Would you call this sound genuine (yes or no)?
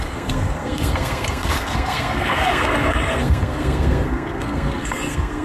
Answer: no